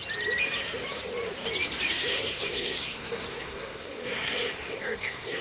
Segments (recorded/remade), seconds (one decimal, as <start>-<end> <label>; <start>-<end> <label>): 0.0-2.1 recorded; 2.1-5.4 remade